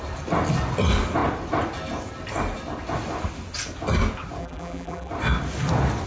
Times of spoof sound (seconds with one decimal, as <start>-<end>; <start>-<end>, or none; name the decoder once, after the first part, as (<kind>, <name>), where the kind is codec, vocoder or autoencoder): 4.4-5.1 (vocoder, BigVGAN v2)